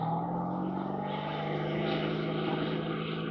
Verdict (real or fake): real